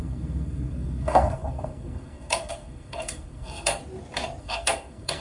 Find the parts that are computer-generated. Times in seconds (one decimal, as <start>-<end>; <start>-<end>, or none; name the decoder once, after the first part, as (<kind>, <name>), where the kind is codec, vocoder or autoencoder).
0.0-3.8 (codec, SNAC); 4.4-5.2